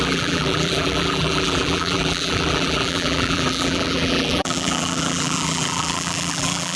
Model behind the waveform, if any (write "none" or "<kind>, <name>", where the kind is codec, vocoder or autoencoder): vocoder, BigVGAN v2